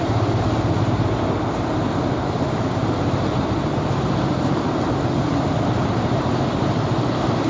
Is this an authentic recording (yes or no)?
yes